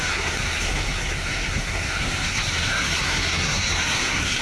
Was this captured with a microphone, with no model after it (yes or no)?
no